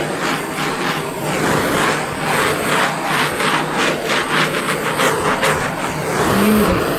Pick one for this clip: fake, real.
real